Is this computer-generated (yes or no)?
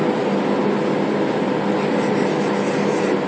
no